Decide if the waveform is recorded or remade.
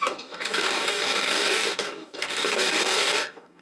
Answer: remade